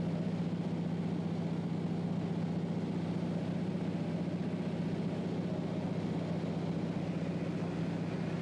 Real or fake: real